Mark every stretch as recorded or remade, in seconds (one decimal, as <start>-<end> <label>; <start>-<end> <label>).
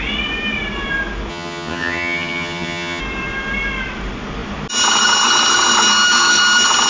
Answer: 0.0-1.3 recorded; 1.3-3.0 remade; 3.0-6.9 recorded